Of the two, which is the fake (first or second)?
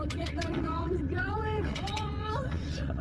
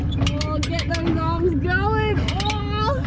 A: first